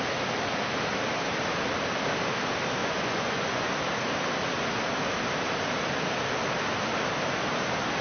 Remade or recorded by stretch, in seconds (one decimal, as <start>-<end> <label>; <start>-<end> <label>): 0.0-2.8 recorded; 2.8-3.7 remade; 3.7-8.0 recorded